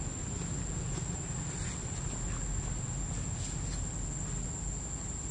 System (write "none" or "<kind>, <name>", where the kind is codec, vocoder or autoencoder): none